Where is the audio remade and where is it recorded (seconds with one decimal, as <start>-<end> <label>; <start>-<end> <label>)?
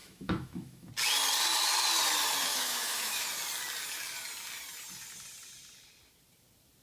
0.0-0.9 remade; 0.9-2.5 recorded; 2.5-3.3 remade; 3.3-6.8 recorded